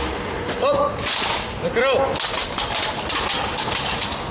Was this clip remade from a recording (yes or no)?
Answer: no